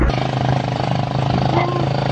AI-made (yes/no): no